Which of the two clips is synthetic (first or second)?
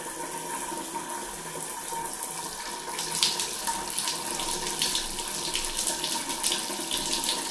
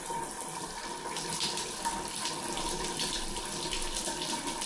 second